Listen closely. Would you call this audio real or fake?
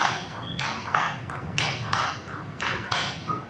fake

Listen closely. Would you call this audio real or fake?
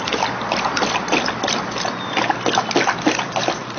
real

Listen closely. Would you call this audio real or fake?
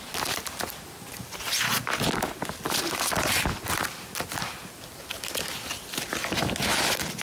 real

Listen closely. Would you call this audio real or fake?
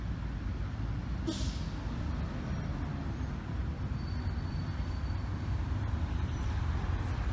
real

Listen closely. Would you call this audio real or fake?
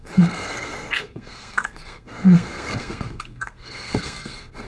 fake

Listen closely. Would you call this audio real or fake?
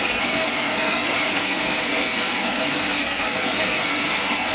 fake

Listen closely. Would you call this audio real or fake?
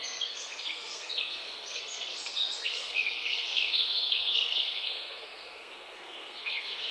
fake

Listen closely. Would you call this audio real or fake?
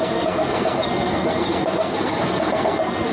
fake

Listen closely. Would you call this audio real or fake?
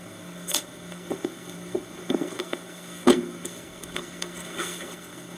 fake